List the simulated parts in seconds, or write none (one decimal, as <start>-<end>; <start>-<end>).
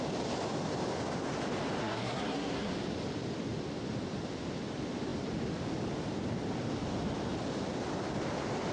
1.8-2.7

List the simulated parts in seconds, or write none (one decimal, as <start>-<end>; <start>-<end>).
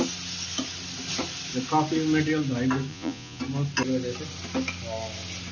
2.9-3.4